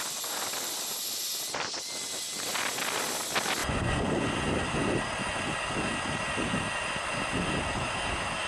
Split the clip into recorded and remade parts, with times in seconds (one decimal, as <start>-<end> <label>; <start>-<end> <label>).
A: 0.0-3.6 recorded; 3.6-4.3 remade; 4.3-8.5 recorded